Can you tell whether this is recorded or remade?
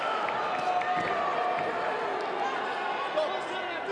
recorded